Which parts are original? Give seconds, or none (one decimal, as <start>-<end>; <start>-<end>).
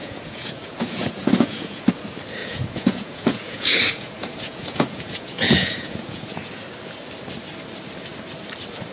1.9-2.4; 6.5-8.9